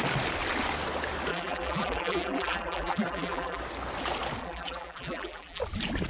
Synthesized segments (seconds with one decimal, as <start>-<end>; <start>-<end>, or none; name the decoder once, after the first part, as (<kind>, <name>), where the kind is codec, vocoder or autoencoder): 1.3-3.6 (vocoder, BigVGAN v2); 4.4-5.6